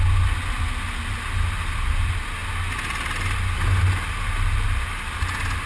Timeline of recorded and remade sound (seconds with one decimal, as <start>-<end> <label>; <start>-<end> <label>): 0.0-5.7 recorded